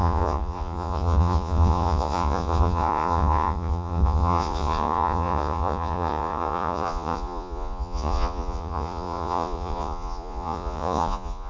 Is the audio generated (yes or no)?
yes